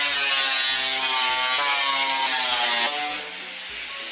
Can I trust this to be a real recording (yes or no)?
yes